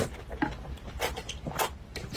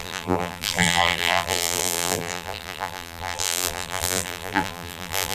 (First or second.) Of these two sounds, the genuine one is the first